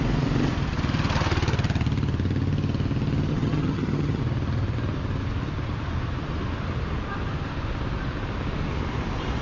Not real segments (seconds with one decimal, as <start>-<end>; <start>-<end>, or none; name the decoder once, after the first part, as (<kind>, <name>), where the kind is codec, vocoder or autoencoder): 3.3-4.2 (vocoder, HiFi-GAN)